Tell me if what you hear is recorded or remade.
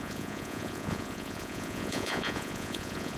remade